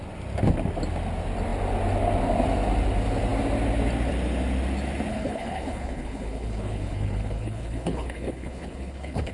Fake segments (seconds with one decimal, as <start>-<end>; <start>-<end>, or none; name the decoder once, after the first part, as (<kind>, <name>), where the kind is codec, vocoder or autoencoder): 5.1-9.3 (codec, HILCodec)